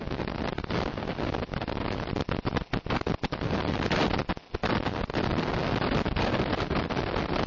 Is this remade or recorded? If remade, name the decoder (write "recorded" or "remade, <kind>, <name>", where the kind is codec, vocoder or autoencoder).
recorded